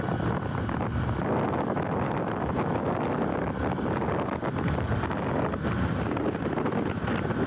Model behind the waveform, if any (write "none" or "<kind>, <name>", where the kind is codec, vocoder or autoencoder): none